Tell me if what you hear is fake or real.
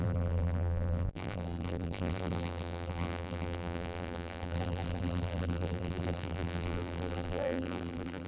fake